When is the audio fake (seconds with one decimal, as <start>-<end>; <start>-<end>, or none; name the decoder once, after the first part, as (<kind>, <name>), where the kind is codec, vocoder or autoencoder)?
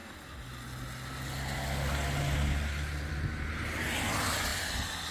none